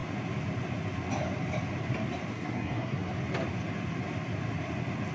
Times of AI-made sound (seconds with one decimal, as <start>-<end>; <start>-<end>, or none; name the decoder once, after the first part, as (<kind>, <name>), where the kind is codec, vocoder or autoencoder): 2.3-3.1 (codec, SNAC)